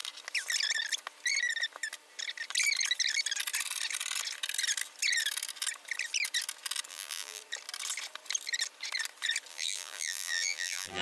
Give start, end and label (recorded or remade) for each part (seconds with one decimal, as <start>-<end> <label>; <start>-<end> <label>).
0.0-6.9 recorded; 6.9-7.4 remade; 7.4-9.5 recorded; 9.5-11.0 remade